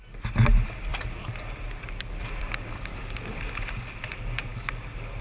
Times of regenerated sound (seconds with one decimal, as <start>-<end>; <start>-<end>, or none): none